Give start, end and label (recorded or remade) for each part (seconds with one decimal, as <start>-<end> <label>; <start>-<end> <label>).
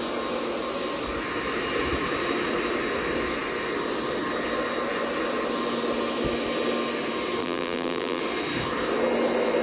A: 0.0-7.4 recorded; 7.4-8.2 remade; 8.2-9.6 recorded